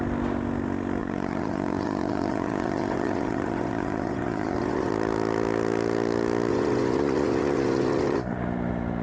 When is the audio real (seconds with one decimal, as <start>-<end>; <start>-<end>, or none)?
0.0-1.0; 4.9-6.5; 8.3-9.0